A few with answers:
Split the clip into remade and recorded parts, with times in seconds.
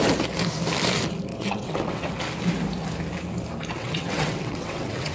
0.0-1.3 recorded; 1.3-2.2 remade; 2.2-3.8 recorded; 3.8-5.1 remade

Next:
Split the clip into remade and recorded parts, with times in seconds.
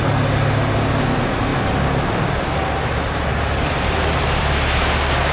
0.0-3.3 recorded; 3.3-4.4 remade; 4.4-5.3 recorded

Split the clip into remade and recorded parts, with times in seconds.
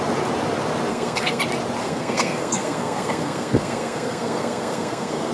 0.0-0.9 recorded; 0.9-1.4 remade; 1.4-1.8 recorded; 1.8-5.3 remade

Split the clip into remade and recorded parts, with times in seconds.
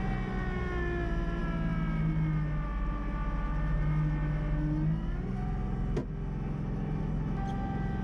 0.0-8.0 recorded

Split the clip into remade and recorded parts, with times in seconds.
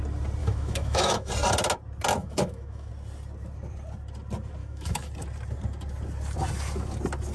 0.0-0.4 recorded; 0.4-1.3 remade; 1.3-2.2 recorded; 2.2-2.9 remade; 2.9-4.6 recorded; 4.6-5.1 remade; 5.1-7.3 recorded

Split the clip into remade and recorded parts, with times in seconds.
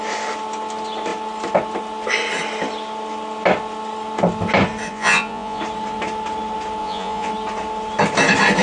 0.0-4.9 recorded; 4.9-5.6 remade; 5.6-6.8 recorded; 6.8-7.3 remade; 7.3-8.6 recorded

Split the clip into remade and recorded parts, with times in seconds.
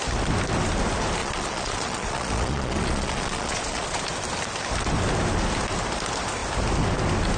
0.0-1.2 recorded; 1.2-4.0 remade; 4.0-7.4 recorded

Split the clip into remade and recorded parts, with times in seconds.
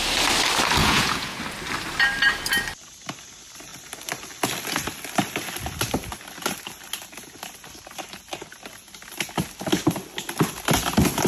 0.0-0.8 recorded; 0.8-1.4 remade; 1.4-11.3 recorded